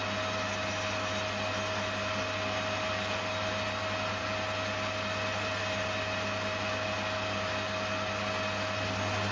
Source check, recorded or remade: recorded